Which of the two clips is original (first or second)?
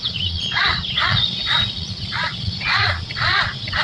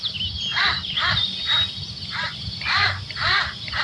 second